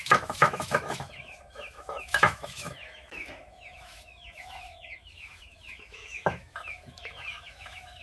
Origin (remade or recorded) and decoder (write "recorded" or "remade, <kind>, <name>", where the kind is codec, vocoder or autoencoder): remade, autoencoder, DAC-VAE